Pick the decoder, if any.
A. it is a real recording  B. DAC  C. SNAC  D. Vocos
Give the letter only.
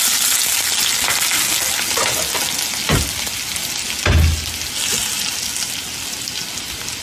A